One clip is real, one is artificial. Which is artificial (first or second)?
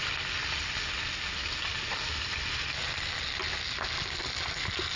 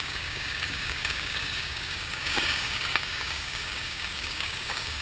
second